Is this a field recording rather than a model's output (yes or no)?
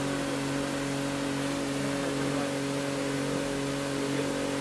yes